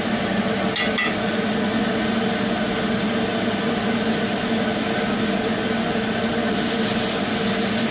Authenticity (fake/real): real